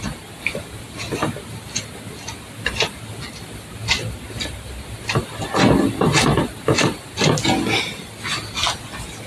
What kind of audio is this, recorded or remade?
recorded